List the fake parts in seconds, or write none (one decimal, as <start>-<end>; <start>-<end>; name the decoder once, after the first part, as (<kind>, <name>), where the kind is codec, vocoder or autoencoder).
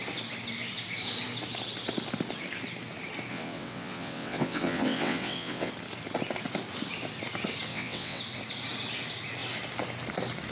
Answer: 3.3-5.7 (vocoder, WaveNeXt); 7.7-8.2